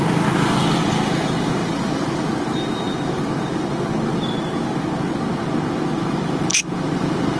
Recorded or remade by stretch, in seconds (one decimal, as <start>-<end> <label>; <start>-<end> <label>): 0.0-7.4 recorded